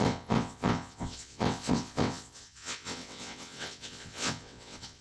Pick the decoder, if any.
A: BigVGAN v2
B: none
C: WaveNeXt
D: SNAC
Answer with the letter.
C